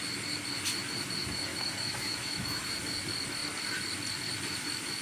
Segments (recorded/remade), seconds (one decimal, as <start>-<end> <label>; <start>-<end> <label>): 0.0-1.5 recorded; 1.5-2.6 remade; 2.6-5.0 recorded